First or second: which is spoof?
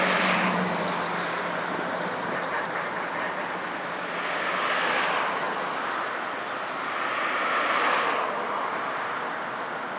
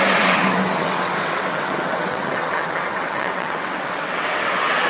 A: second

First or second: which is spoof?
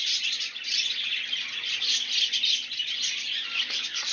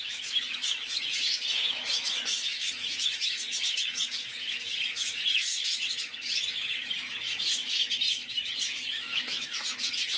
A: second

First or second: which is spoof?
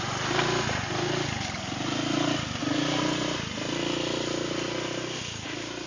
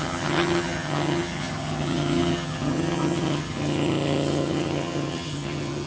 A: second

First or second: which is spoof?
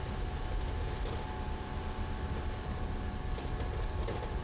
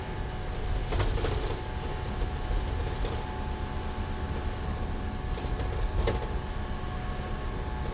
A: first